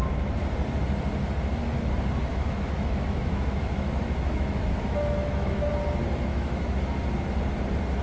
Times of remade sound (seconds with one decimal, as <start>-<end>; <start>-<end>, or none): 2.3-5.7; 6.3-6.8